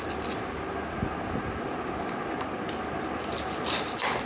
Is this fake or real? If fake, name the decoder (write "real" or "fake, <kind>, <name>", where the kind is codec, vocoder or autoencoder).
real